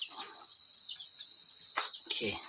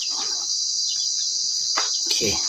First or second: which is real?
first